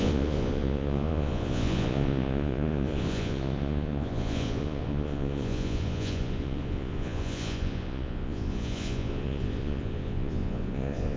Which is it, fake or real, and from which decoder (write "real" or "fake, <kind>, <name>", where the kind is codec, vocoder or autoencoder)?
fake, vocoder, Vocos